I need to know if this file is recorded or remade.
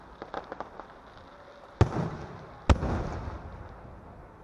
recorded